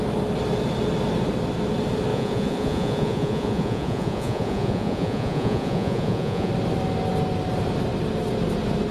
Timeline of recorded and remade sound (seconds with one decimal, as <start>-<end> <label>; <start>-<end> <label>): 0.0-2.1 recorded; 2.1-6.5 remade; 6.5-8.9 recorded